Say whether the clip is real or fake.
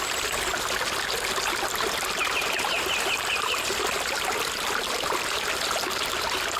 real